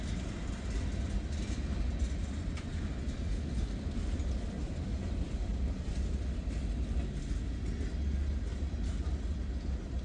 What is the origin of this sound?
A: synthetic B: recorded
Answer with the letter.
B